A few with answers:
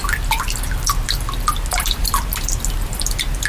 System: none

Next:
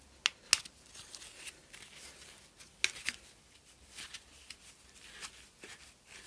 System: none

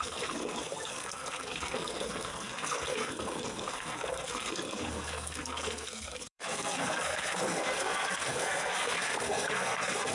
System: codec, SNAC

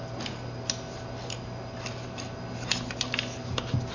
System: none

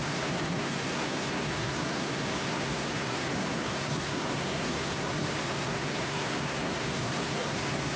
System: codec, SNAC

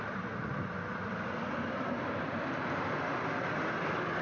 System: none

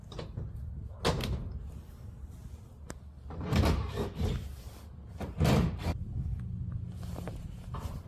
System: none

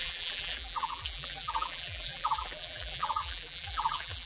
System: vocoder, BigVGAN v2